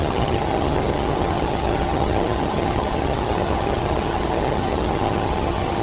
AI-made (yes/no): yes